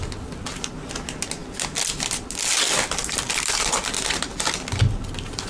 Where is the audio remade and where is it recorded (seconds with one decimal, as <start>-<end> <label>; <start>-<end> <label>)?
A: 0.0-5.5 recorded